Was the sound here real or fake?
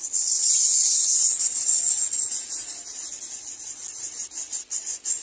real